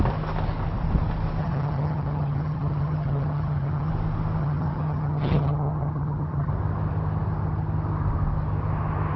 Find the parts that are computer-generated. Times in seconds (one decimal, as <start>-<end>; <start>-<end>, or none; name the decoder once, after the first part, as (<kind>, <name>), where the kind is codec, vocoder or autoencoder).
1.4-3.9 (vocoder, HiFi-GAN); 4.4-6.5

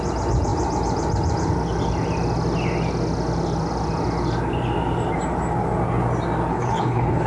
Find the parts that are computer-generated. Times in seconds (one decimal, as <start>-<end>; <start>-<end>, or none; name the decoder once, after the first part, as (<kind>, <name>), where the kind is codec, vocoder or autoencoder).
6.5-7.3 (codec, HILCodec)

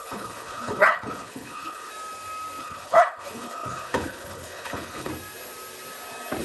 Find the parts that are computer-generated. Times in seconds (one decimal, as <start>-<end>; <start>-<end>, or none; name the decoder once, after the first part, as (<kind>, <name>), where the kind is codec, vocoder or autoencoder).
0.0-1.9 (codec, HILCodec); 2.6-5.1

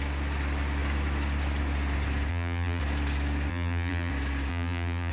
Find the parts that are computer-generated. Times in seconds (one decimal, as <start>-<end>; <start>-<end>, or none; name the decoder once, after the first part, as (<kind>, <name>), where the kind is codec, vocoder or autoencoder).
2.3-2.8 (vocoder, BigVGAN v2); 3.5-4.1; 4.5-5.1

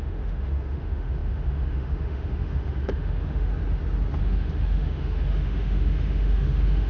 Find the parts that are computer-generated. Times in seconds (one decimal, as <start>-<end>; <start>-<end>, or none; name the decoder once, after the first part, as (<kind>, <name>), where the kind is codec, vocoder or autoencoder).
0.0-3.5 (autoencoder, DAC-VAE); 4.2-6.9

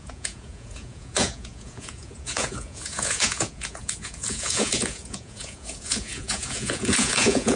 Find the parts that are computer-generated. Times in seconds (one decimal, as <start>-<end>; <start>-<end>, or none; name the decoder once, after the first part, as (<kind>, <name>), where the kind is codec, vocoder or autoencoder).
0.0-7.5 (vocoder, Vocos)

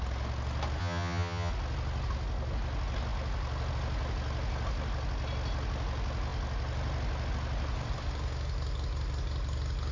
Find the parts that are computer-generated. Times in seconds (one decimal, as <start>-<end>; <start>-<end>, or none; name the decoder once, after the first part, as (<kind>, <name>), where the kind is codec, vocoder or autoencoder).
0.8-1.5 (vocoder, HiFi-GAN)

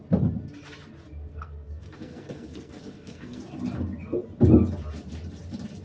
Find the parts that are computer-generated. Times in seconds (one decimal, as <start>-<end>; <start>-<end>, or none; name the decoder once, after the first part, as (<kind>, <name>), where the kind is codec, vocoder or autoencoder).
1.3-3.4 (codec, SNAC)